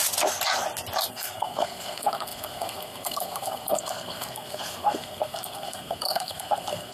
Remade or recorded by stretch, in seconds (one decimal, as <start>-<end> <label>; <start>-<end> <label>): 0.0-1.1 recorded; 1.1-6.9 remade